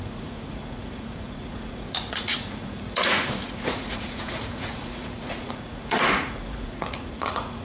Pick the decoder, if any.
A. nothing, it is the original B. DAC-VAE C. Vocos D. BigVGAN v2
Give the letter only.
C